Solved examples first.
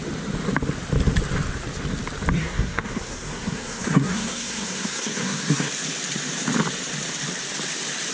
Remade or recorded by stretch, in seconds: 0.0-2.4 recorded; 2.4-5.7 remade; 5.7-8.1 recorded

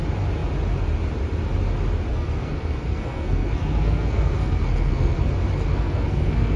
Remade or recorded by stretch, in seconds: 0.0-2.1 recorded; 2.1-5.2 remade; 5.2-5.7 recorded; 5.7-6.6 remade

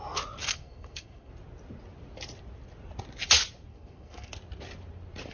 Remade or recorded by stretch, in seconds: 0.0-0.5 recorded; 0.5-1.3 remade; 1.3-3.7 recorded; 3.7-4.3 remade; 4.3-5.3 recorded

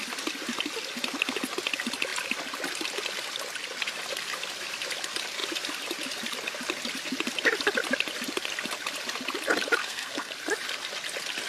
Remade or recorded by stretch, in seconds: 0.0-9.8 recorded; 9.8-10.3 remade; 10.3-11.5 recorded

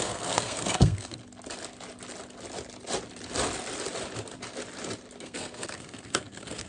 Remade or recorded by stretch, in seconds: 0.0-1.2 remade; 1.2-5.2 recorded; 5.2-6.7 remade